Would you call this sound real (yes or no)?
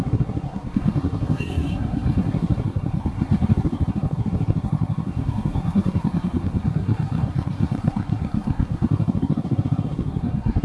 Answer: no